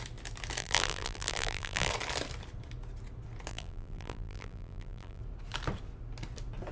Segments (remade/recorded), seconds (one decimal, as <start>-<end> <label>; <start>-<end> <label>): 0.0-0.6 recorded; 0.6-1.9 remade; 1.9-3.5 recorded; 3.5-5.2 remade; 5.2-6.7 recorded